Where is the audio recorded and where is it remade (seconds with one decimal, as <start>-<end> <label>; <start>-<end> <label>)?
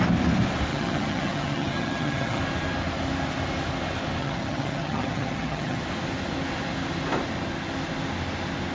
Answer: 0.0-0.7 recorded; 0.7-2.4 remade; 2.4-4.2 recorded; 4.2-5.8 remade; 5.8-8.7 recorded